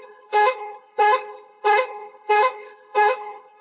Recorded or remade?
remade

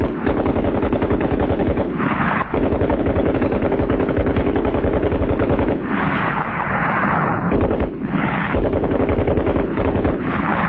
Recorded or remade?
remade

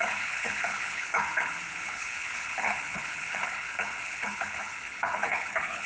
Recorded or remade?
remade